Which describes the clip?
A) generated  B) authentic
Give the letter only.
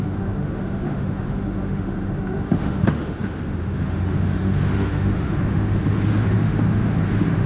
A